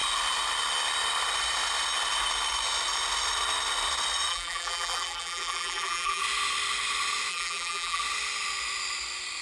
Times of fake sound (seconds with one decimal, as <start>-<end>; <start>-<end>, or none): 4.3-6.2; 7.3-8.0